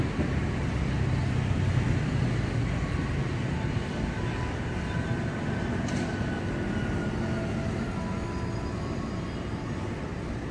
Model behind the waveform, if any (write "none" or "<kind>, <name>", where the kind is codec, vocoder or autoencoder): none